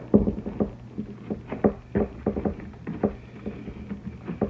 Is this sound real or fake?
real